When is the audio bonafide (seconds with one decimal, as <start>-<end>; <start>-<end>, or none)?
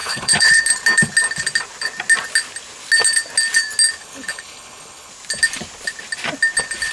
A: 0.6-4.0; 5.1-6.9